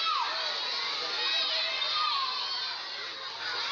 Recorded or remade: recorded